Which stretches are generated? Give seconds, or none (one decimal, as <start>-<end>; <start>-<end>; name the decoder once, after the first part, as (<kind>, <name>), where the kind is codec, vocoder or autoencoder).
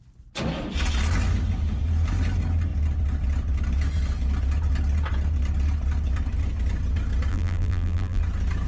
7.3-8.2 (vocoder, BigVGAN v2)